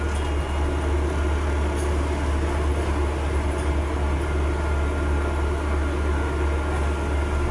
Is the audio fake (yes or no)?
no